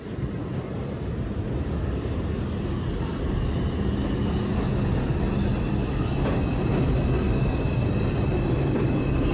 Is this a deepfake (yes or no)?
no